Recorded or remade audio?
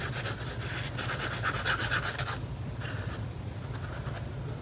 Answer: recorded